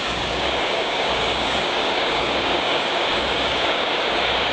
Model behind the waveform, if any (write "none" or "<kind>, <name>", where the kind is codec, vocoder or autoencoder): codec, DAC